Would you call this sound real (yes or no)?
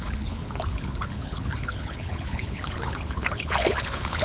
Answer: no